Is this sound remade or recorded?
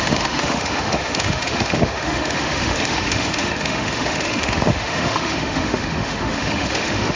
remade